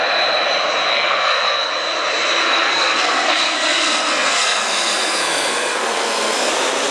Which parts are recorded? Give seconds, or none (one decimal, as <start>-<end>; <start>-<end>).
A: 0.0-0.9; 1.7-2.4; 6.5-6.9